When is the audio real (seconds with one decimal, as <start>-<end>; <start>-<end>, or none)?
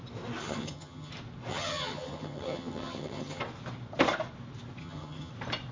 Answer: 0.0-0.4; 1.1-1.5; 3.4-4.8; 5.3-5.7